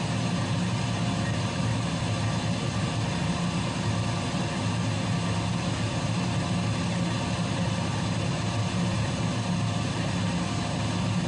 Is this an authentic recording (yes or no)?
yes